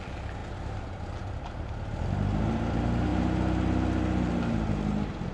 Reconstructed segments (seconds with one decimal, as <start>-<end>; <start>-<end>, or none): none